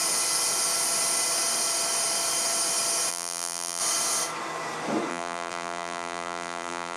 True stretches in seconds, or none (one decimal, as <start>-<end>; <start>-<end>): 0.0-3.1; 3.8-5.1